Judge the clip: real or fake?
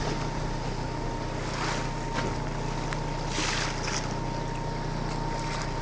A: real